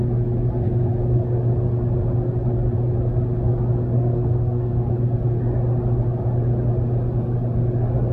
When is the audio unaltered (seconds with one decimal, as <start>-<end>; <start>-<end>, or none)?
0.0-4.0; 4.9-8.1